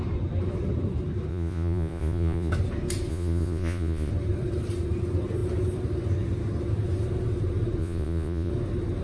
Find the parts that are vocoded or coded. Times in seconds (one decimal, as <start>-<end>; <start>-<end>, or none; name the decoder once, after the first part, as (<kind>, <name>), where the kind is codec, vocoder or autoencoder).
1.3-2.5 (vocoder, Vocos); 3.1-4.1; 7.8-8.5